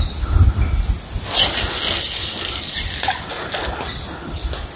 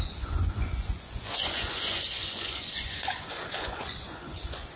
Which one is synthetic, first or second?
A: second